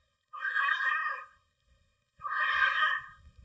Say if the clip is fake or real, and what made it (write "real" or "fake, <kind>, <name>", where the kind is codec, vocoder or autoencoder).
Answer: fake, codec, SNAC